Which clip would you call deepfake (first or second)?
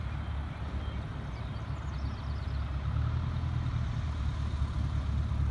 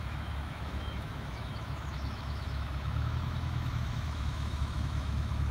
second